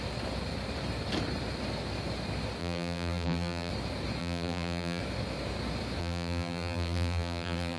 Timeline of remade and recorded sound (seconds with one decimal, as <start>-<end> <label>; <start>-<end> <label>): 0.0-2.6 recorded; 2.6-3.7 remade; 3.7-4.2 recorded; 4.2-5.0 remade; 5.0-6.0 recorded; 6.0-7.8 remade